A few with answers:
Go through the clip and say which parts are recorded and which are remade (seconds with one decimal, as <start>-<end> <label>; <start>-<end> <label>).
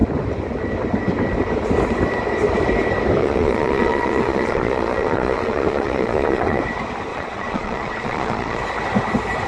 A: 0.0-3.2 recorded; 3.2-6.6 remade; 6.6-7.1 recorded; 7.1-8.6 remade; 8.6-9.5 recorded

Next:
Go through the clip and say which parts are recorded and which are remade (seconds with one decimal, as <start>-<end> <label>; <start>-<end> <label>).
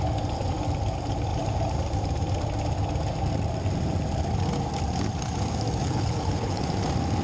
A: 0.0-5.8 recorded; 5.8-6.7 remade; 6.7-7.2 recorded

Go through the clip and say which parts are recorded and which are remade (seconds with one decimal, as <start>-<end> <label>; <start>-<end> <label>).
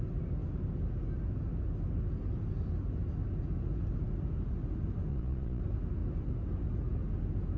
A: 0.0-5.1 recorded; 5.1-5.6 remade; 5.6-7.6 recorded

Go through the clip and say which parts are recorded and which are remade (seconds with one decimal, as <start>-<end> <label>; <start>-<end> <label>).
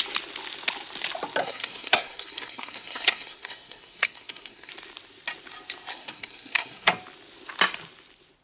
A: 0.0-1.4 recorded; 1.4-4.7 remade; 4.7-5.9 recorded; 5.9-6.9 remade; 6.9-8.4 recorded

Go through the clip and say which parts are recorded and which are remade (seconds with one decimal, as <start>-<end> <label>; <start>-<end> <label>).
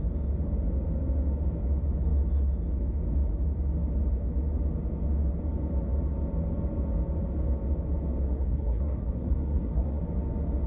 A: 0.0-8.2 recorded; 8.2-10.0 remade; 10.0-10.7 recorded